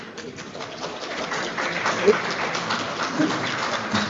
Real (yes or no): yes